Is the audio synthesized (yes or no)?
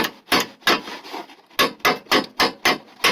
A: no